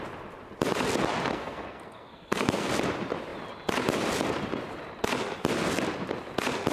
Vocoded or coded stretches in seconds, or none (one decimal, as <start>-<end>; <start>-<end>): 1.3-2.7